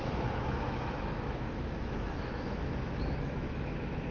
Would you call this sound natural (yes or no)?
no